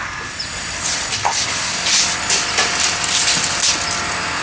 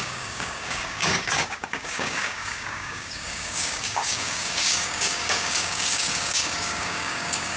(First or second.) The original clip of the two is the first